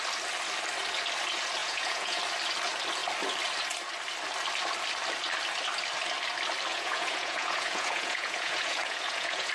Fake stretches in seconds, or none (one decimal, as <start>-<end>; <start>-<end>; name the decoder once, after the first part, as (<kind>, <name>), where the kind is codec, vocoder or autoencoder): 1.6-2.2 (vocoder, Vocos); 6.7-9.5